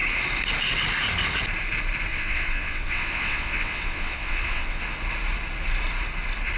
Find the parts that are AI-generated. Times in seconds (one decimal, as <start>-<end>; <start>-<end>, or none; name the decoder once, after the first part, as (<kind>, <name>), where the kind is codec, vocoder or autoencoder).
2.1-4.8 (vocoder, WaveNeXt)